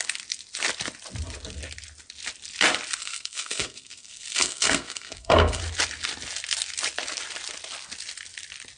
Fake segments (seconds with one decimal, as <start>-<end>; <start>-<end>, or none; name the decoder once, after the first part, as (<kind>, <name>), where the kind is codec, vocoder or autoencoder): 3.0-5.6 (codec, SNAC)